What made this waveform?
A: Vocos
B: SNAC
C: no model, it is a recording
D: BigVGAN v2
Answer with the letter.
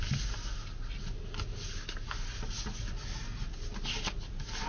C